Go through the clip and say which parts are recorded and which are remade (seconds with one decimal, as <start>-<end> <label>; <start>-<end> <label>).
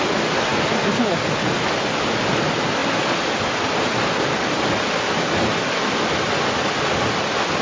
0.0-7.6 recorded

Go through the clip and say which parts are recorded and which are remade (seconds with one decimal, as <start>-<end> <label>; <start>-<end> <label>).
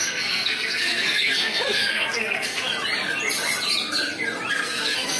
0.0-2.7 remade; 2.7-4.5 recorded; 4.5-5.2 remade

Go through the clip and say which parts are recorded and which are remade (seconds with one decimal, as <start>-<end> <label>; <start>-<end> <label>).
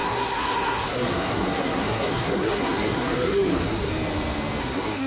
0.0-3.9 remade; 3.9-4.6 recorded; 4.6-5.1 remade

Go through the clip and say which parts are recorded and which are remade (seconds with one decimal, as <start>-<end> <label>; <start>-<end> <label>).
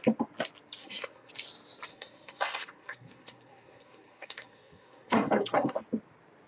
0.0-0.8 recorded; 0.8-1.3 remade; 1.3-1.9 recorded; 1.9-5.8 remade; 5.8-6.5 recorded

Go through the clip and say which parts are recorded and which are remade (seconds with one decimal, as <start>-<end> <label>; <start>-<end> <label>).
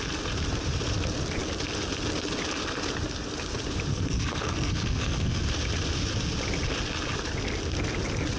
0.0-3.9 recorded; 3.9-5.4 remade; 5.4-8.4 recorded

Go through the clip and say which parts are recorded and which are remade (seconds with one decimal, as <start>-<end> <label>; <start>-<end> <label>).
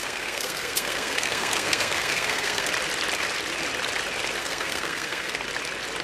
0.0-2.7 remade; 2.7-4.4 recorded; 4.4-5.3 remade; 5.3-6.0 recorded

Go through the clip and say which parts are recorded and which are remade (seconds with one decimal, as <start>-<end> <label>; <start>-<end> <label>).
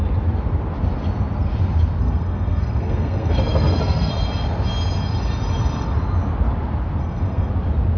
0.0-2.0 recorded; 2.0-4.1 remade; 4.1-7.0 recorded; 7.0-7.5 remade; 7.5-8.0 recorded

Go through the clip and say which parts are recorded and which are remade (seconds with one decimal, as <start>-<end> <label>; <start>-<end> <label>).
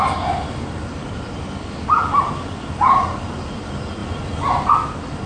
0.0-5.3 recorded